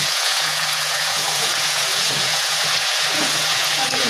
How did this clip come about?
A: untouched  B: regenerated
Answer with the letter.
B